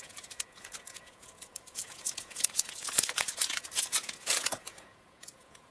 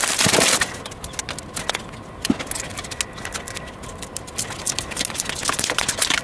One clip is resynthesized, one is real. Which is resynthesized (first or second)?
first